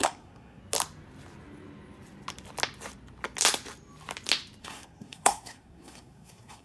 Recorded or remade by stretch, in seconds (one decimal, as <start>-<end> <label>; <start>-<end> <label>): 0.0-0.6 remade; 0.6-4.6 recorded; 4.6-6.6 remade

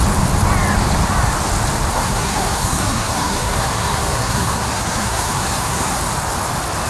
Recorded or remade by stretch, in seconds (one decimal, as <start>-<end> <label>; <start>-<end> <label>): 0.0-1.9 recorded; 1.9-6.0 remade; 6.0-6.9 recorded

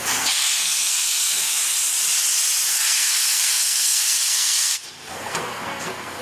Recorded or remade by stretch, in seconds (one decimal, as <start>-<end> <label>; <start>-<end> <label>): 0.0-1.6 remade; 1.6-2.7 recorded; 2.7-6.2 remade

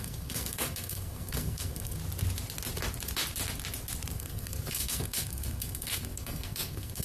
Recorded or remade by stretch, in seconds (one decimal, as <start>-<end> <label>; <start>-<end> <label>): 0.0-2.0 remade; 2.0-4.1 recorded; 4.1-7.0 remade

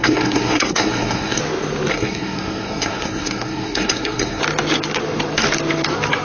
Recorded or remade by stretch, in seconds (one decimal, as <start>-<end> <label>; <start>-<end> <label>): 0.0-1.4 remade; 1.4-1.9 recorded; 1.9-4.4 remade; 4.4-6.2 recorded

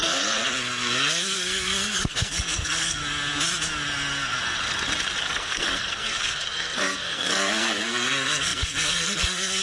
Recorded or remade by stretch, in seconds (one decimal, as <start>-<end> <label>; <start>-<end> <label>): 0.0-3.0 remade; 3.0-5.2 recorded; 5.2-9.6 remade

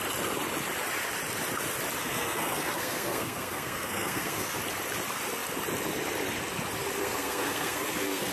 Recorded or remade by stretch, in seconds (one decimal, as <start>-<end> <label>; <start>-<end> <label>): 0.0-2.0 recorded; 2.0-4.6 remade; 4.6-7.0 recorded; 7.0-8.3 remade

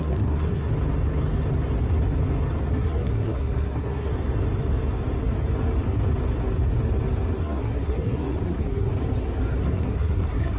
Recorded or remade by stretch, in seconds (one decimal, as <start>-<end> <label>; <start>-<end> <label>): 0.0-0.7 remade; 0.7-2.7 recorded; 2.7-4.1 remade; 4.1-7.4 recorded; 7.4-8.9 remade; 8.9-9.6 recorded; 9.6-10.6 remade